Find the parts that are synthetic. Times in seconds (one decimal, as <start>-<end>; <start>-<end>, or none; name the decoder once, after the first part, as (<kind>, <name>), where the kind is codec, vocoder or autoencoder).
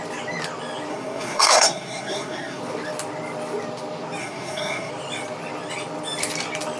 0.9-2.6 (codec, SNAC); 4.2-4.9